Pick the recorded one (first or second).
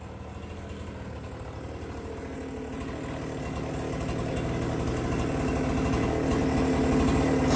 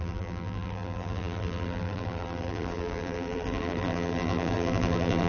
first